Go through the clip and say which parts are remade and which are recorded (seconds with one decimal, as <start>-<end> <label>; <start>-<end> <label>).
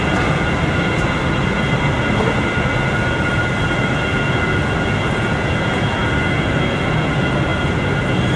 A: 0.0-8.4 recorded